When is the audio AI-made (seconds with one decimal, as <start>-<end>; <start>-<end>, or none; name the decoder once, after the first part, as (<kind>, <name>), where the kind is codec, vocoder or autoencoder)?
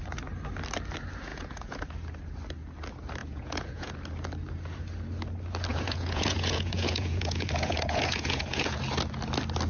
1.3-1.8 (vocoder, Vocos); 3.2-3.9; 5.7-8.8